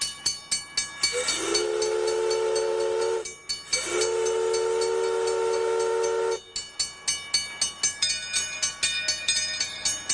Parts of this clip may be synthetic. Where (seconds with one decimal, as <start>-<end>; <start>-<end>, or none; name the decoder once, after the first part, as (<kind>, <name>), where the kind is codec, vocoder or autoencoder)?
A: none